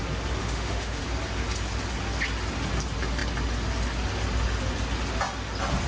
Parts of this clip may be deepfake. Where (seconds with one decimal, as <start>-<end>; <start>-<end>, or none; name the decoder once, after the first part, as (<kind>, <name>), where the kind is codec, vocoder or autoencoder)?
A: 0.4-1.0 (autoencoder, DAC-VAE)